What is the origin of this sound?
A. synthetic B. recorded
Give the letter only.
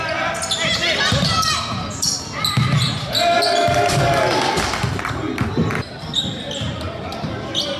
B